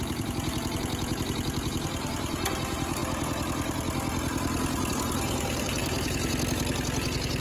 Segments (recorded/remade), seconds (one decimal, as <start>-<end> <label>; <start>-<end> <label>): 0.0-3.0 remade; 3.0-4.9 recorded; 4.9-5.8 remade; 5.8-7.4 recorded